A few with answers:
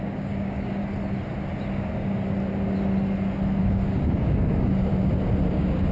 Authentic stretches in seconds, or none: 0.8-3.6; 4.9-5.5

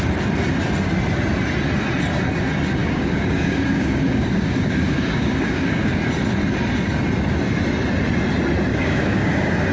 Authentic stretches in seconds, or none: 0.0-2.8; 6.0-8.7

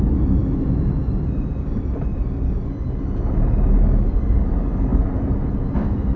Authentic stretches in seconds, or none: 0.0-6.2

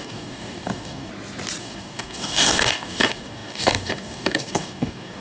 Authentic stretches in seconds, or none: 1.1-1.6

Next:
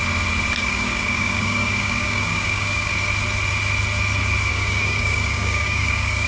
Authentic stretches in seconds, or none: 0.0-0.6; 2.9-4.5

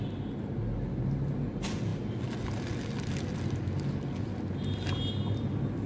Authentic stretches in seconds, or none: 0.0-5.9

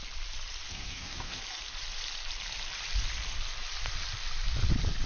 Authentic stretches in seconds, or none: 0.0-0.7; 1.4-5.1